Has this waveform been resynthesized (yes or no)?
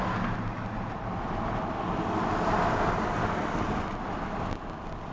no